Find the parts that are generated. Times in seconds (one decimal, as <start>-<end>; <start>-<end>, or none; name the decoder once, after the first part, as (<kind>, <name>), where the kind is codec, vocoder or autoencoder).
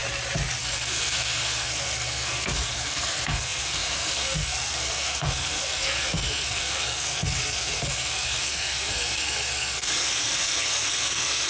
0.6-11.5 (codec, SNAC)